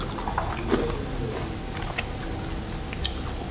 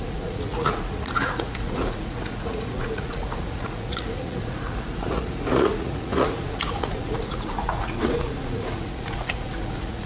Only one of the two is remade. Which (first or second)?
second